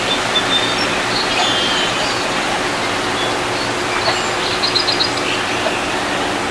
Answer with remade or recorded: recorded